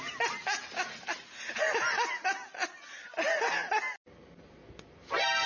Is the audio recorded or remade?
recorded